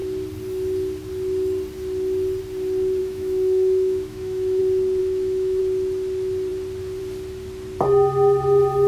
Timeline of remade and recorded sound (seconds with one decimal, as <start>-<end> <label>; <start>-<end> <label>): 0.0-3.0 recorded; 3.0-4.6 remade; 4.6-5.0 recorded; 5.0-5.6 remade; 5.6-8.9 recorded

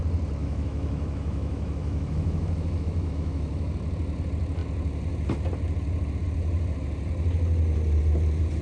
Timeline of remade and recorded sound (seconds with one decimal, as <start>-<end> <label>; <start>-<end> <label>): 0.0-0.4 recorded; 0.4-3.7 remade; 3.7-8.6 recorded

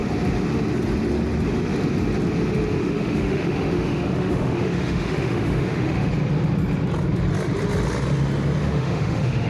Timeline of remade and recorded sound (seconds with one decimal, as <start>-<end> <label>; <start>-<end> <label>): 0.0-2.8 recorded; 2.8-6.1 remade; 6.1-8.6 recorded; 8.6-9.5 remade

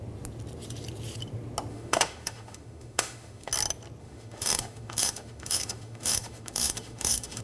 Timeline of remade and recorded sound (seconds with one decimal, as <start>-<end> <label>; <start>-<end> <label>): 0.0-1.7 recorded; 1.7-3.5 remade; 3.5-4.0 recorded; 4.0-7.4 remade

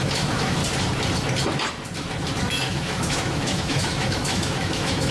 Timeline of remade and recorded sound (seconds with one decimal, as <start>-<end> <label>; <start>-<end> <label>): 0.0-0.6 remade; 0.6-2.4 recorded; 2.4-5.1 remade

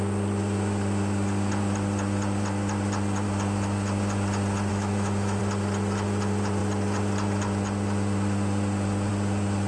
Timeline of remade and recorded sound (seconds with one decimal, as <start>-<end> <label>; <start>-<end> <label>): 0.0-4.7 recorded; 4.7-5.4 remade; 5.4-9.7 recorded